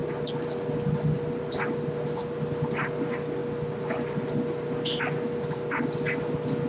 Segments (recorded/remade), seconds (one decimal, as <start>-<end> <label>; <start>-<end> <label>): 0.0-6.7 recorded